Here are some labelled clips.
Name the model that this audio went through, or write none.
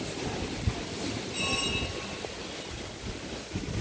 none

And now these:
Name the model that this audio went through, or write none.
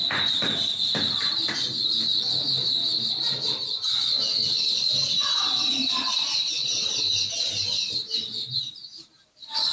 none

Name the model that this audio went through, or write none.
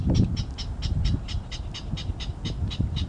none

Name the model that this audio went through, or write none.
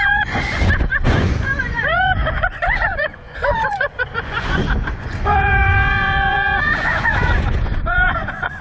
vocoder, Vocos